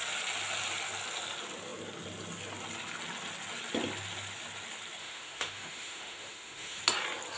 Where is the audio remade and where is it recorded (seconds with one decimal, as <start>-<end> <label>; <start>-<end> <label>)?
0.0-5.0 recorded; 5.0-6.8 remade; 6.8-7.4 recorded